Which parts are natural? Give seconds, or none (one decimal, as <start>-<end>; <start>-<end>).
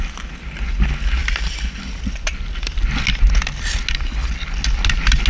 0.0-5.3